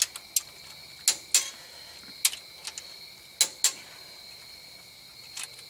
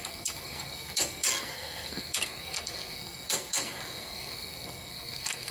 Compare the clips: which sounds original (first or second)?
first